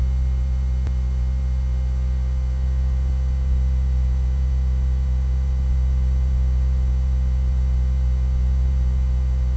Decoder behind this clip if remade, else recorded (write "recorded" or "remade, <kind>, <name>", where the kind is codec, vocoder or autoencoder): recorded